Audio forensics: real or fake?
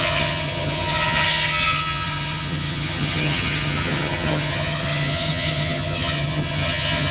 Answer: fake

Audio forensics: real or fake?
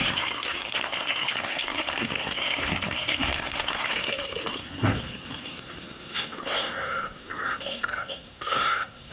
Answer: fake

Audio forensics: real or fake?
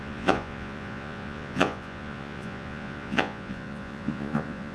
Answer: fake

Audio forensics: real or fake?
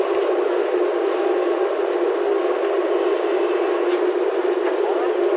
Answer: real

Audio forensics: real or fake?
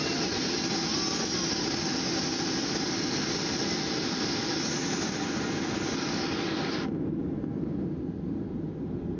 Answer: real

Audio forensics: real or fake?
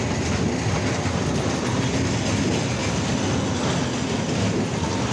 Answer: real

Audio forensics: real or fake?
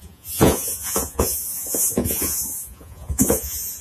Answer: fake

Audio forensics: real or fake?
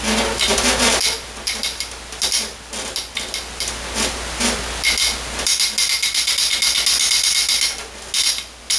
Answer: real